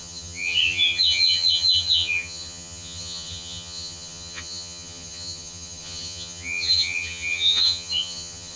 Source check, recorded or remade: remade